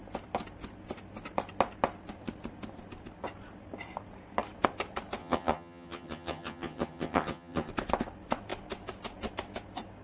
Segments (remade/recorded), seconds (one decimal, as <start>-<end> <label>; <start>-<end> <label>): 0.0-5.2 recorded; 5.2-7.7 remade; 7.7-10.0 recorded